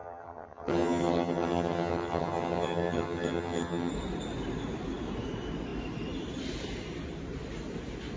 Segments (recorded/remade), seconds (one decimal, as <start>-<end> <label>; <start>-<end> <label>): 0.0-3.9 remade; 3.9-8.2 recorded